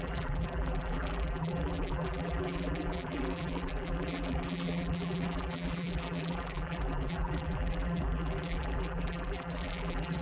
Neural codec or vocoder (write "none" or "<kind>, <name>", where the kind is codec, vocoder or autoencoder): vocoder, BigVGAN v2